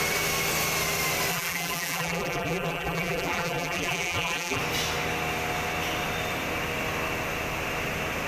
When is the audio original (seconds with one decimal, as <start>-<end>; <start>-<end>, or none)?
0.0-1.3; 4.6-8.3